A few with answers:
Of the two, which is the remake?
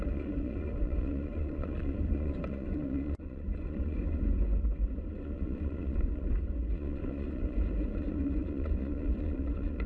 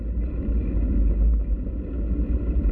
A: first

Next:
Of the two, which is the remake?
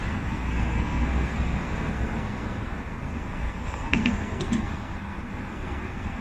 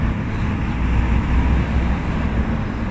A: first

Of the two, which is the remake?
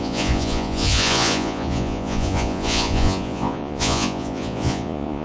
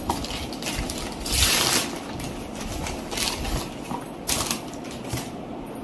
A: first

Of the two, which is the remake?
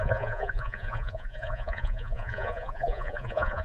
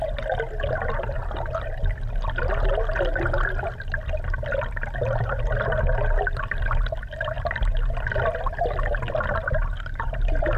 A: first